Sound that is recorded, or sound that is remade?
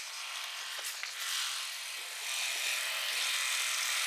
recorded